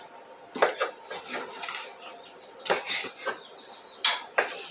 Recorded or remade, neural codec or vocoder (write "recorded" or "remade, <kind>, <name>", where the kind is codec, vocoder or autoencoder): recorded